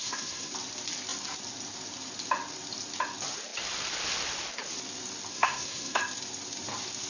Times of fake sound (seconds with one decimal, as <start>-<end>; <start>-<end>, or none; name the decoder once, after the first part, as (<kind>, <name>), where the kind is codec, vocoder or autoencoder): 0.0-0.5 (codec, SNAC); 5.3-6.0